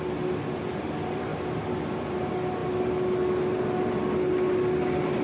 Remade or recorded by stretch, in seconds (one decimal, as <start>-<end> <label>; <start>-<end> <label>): 0.0-5.2 recorded